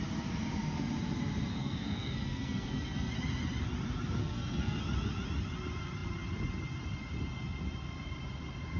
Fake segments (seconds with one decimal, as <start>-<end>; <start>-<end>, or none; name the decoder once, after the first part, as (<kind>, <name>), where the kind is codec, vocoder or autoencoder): 1.5-3.1 (codec, SNAC); 4.2-4.8